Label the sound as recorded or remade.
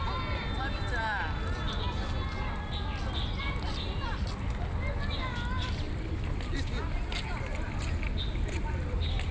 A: recorded